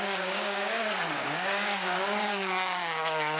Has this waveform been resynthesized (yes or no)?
yes